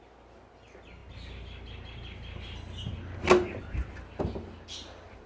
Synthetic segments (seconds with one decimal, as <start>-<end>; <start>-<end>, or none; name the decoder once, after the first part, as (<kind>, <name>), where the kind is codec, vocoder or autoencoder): none